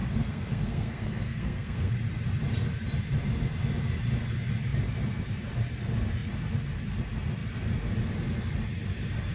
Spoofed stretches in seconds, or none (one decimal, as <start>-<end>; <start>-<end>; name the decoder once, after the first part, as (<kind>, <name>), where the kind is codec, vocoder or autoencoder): 0.0-1.9 (codec, SNAC)